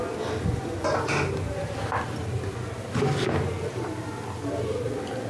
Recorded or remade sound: recorded